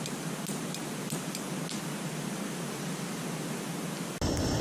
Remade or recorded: recorded